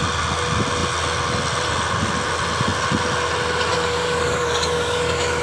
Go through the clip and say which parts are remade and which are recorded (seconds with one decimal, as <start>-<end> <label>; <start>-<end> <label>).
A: 0.0-3.7 recorded; 3.7-5.4 remade